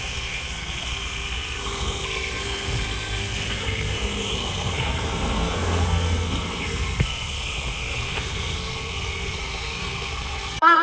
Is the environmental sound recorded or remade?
remade